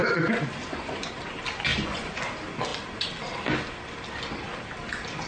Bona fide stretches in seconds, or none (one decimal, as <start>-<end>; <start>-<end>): 0.0-0.6; 1.1-1.7; 2.2-5.3